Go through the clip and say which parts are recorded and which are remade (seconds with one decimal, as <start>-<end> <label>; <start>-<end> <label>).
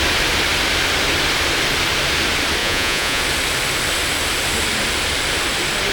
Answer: 0.0-2.6 recorded; 2.6-3.2 remade; 3.2-5.9 recorded